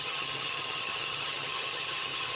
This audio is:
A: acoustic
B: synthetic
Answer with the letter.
B